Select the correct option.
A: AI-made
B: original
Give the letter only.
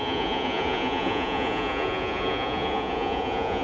A